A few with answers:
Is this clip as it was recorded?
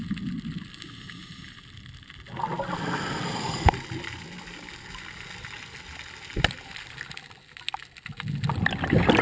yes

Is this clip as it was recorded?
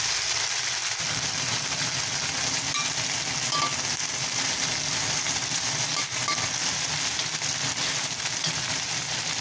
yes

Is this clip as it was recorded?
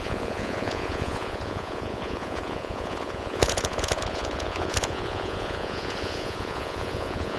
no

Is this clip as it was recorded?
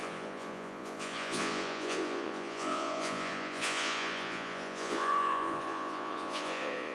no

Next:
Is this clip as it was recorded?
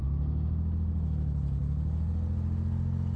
yes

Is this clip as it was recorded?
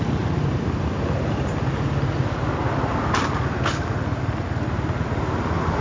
yes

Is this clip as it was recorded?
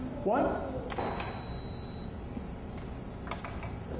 yes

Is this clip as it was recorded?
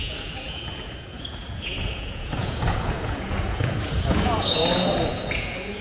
no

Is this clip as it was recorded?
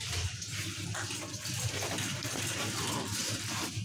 yes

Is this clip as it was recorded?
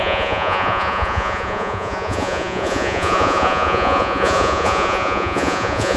no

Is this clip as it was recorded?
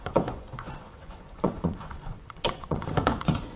no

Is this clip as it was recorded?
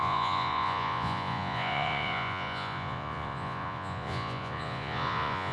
no